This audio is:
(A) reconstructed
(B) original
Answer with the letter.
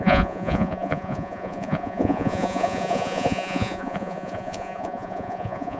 A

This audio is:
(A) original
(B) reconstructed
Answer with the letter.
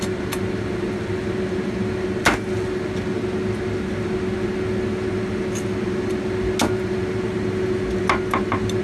A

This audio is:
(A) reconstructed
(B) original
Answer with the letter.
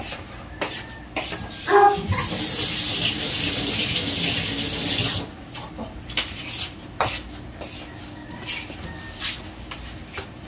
B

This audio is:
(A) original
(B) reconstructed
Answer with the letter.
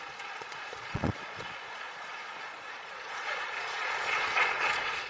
B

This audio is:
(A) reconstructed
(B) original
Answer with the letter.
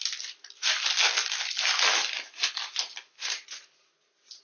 B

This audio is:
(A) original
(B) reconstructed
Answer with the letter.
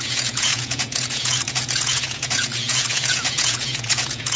B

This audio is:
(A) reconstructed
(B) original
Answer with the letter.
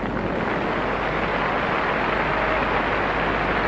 B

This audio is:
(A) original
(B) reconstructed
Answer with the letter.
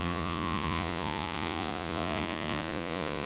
B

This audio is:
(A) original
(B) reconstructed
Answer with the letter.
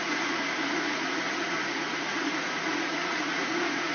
B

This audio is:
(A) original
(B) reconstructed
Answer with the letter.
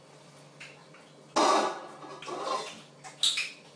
A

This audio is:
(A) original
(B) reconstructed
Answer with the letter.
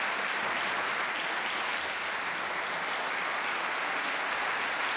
A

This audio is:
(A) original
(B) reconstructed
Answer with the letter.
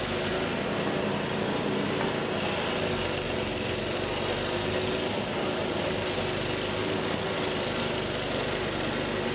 A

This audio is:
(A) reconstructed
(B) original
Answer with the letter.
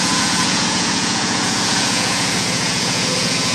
A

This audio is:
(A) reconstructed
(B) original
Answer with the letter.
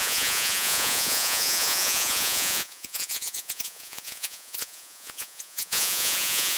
A